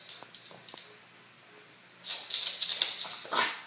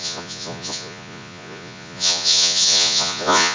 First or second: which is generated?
second